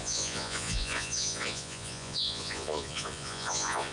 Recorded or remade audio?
remade